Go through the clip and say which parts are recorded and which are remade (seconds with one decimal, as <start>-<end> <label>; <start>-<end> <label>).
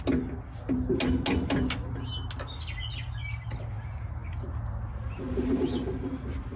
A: 0.0-6.6 recorded